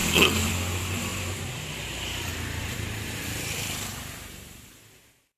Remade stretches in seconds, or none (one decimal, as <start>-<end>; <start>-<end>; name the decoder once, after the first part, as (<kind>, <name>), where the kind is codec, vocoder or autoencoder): 0.0-0.5 (vocoder, BigVGAN v2); 1.1-1.7; 2.3-3.1; 3.9-4.7